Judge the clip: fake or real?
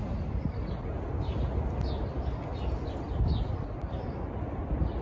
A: real